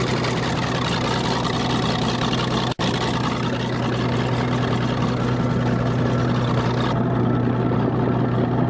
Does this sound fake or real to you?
real